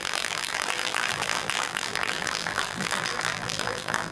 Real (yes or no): no